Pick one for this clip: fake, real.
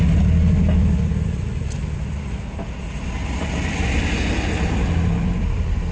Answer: real